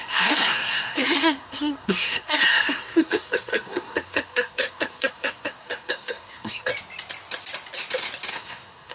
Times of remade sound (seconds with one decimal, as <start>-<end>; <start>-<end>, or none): 0.0-6.7; 8.3-8.9